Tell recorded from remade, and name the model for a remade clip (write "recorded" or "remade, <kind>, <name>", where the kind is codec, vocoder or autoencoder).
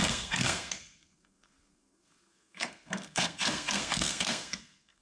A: remade, codec, SNAC